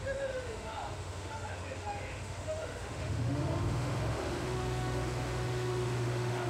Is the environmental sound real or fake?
fake